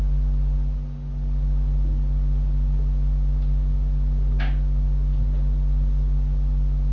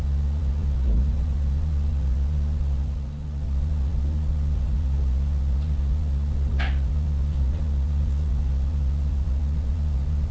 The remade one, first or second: second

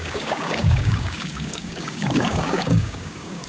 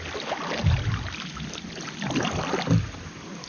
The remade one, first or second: first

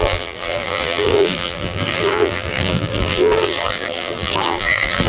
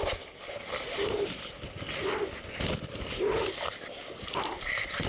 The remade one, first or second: first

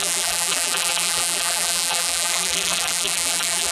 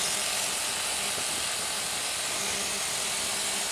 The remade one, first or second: first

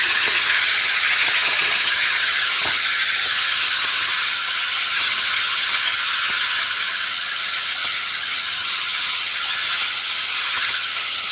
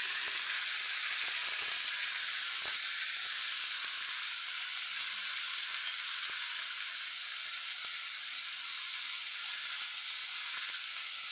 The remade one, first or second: first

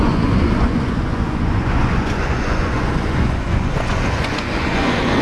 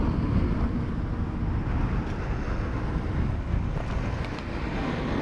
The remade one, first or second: first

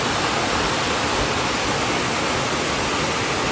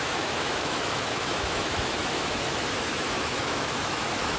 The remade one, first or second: second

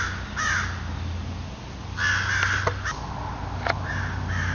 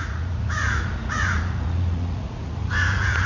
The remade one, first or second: second